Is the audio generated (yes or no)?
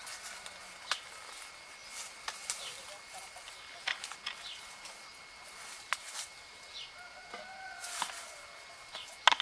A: no